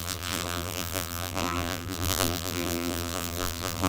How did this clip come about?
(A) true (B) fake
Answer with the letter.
B